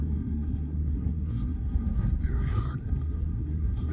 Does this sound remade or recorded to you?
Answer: remade